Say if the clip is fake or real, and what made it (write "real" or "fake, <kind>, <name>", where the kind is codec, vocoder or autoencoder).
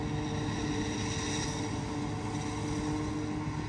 real